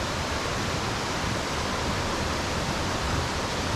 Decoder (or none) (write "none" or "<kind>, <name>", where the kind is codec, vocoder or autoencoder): vocoder, BigVGAN v2